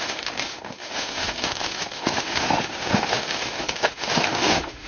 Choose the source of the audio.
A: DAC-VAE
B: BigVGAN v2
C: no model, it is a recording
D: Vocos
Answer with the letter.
A